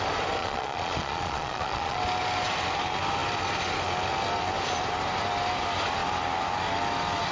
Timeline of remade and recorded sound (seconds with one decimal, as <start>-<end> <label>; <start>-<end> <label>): 0.0-0.4 recorded; 0.4-2.0 remade; 2.0-7.3 recorded